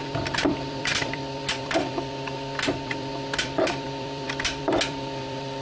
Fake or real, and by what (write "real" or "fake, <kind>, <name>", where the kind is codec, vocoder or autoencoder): fake, vocoder, BigVGAN v2